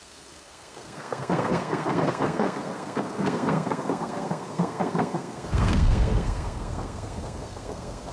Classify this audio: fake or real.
fake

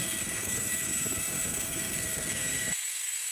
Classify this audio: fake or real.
fake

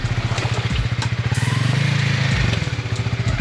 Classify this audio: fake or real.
real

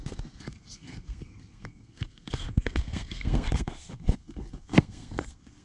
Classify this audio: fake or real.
fake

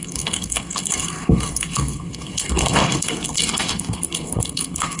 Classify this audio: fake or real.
fake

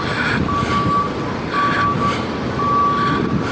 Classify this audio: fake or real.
real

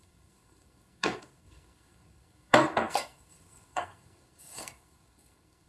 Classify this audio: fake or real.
fake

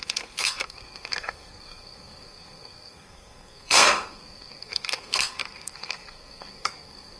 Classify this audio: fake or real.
fake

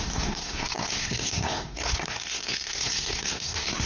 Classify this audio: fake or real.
fake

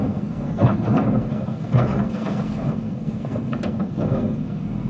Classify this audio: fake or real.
fake